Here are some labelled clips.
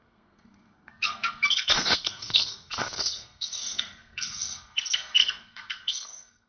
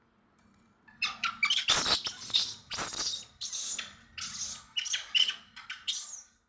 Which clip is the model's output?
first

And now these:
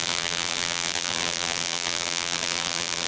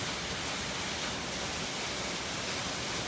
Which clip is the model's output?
first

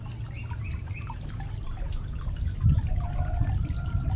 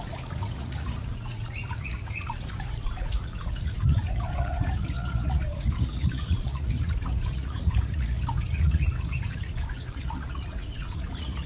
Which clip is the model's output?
second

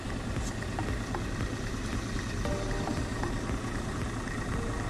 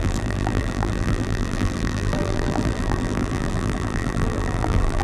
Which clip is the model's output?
second